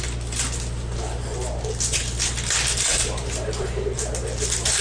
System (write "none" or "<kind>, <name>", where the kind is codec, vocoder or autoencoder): none